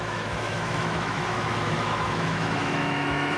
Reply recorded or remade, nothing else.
remade